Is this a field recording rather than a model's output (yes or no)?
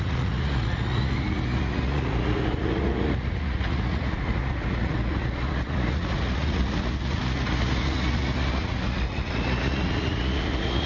no